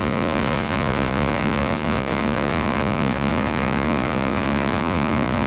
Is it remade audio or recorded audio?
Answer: remade